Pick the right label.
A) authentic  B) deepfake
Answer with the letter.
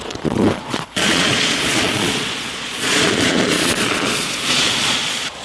B